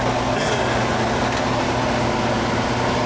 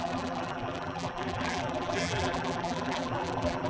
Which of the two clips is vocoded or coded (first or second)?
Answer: second